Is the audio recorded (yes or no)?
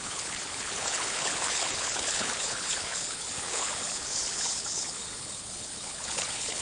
no